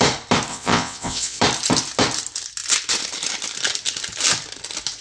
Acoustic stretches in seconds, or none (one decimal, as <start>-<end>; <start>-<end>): 0.0-0.5; 1.4-5.0